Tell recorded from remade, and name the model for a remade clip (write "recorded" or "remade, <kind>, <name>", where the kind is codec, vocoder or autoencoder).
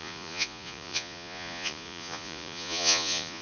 remade, vocoder, Vocos